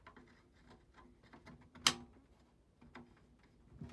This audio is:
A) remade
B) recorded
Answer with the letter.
B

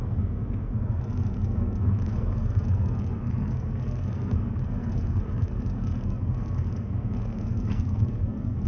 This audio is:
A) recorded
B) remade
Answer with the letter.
B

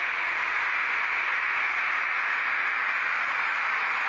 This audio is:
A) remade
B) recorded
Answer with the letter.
B